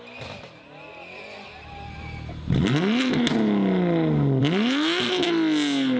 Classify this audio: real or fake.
real